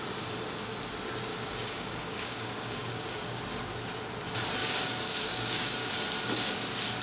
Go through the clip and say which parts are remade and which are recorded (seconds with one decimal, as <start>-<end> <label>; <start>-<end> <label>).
0.0-1.3 recorded; 1.3-3.4 remade; 3.4-4.6 recorded; 4.6-5.9 remade; 5.9-7.0 recorded